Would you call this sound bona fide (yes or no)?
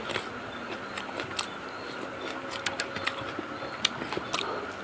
yes